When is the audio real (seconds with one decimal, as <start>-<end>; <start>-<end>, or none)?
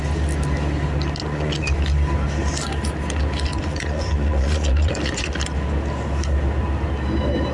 0.0-1.2; 1.7-3.5; 5.3-7.5